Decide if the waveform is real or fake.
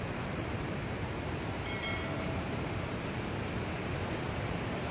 fake